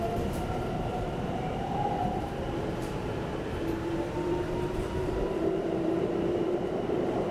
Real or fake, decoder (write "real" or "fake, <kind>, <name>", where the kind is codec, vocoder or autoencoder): fake, vocoder, BigVGAN v2